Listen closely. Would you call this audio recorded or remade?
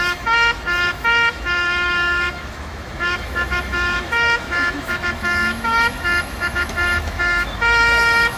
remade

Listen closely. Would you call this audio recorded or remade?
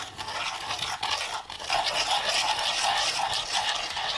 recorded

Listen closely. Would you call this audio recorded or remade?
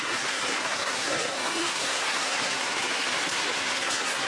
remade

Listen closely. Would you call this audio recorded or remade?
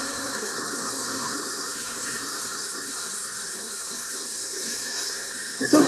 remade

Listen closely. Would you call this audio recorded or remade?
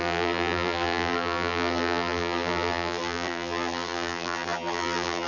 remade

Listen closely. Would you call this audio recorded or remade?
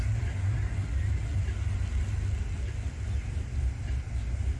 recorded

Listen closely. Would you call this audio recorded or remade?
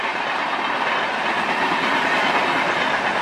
recorded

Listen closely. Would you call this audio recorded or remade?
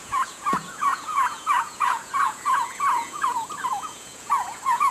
remade